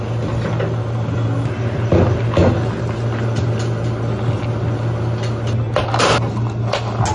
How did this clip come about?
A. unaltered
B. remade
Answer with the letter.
A